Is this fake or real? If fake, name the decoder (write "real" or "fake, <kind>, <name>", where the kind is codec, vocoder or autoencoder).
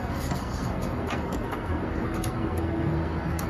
fake, codec, SNAC